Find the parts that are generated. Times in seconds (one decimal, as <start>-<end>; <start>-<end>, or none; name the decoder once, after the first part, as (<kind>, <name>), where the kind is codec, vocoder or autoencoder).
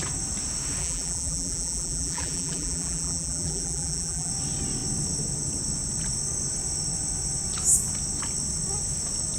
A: 0.8-4.3 (vocoder, BigVGAN v2)